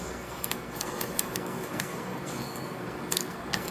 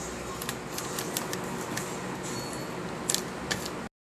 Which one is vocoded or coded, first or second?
first